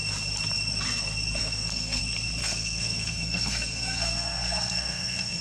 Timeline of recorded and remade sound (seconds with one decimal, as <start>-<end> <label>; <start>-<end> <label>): 0.0-1.4 recorded; 1.4-2.0 remade; 2.0-2.4 recorded; 2.4-5.4 remade